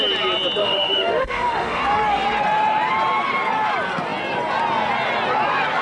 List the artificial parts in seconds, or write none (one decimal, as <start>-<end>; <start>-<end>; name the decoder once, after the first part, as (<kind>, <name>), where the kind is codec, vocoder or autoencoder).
0.6-1.8 (autoencoder, DAC-VAE)